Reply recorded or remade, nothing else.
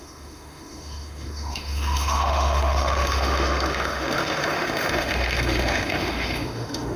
remade